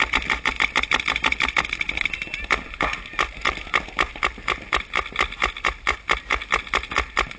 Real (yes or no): yes